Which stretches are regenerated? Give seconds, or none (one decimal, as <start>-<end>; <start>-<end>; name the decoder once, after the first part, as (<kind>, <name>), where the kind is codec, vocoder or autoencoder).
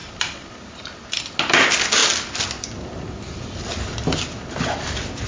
none